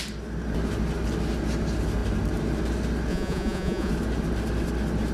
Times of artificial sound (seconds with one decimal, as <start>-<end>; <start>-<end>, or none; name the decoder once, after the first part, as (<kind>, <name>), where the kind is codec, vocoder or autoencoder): 3.1-3.9 (vocoder, Vocos)